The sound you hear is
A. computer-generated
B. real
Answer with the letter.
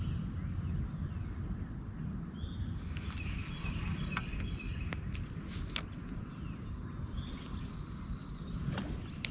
B